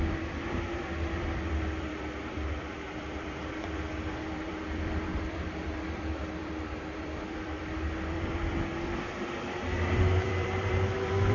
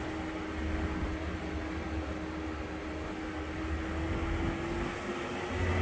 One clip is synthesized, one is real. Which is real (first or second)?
second